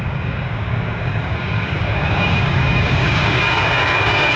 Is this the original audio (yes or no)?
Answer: no